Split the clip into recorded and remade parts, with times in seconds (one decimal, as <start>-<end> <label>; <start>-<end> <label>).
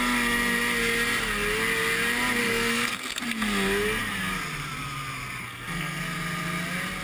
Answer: 0.0-2.4 recorded; 2.4-3.2 remade; 3.2-5.4 recorded; 5.4-6.0 remade; 6.0-7.0 recorded